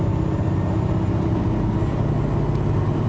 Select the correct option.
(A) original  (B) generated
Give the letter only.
A